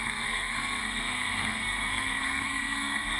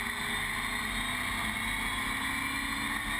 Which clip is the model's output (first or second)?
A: first